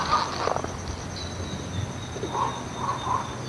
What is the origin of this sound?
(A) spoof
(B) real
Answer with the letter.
B